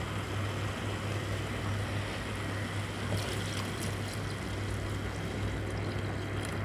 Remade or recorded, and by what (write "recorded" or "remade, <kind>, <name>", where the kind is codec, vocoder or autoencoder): recorded